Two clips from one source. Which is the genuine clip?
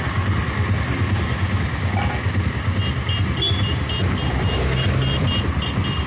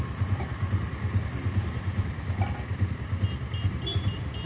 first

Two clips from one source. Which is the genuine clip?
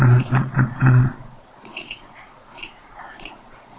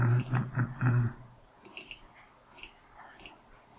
second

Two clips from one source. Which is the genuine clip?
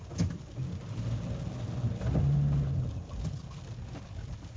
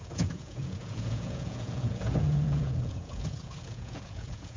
first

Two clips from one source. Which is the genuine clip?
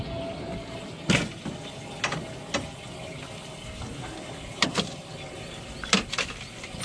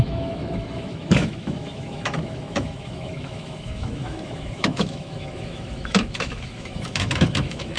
first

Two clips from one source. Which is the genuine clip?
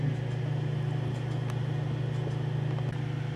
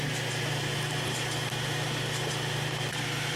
first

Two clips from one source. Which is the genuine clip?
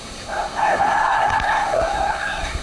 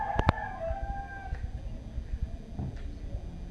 second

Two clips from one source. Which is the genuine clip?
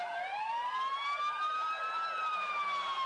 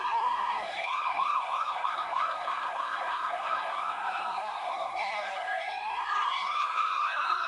first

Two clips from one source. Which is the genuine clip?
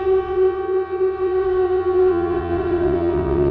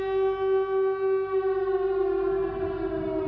second